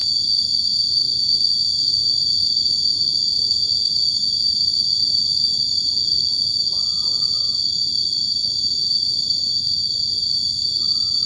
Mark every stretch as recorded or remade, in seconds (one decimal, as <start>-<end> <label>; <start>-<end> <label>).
0.0-2.8 remade; 2.8-3.9 recorded; 3.9-7.2 remade; 7.2-8.2 recorded; 8.2-10.3 remade; 10.3-11.3 recorded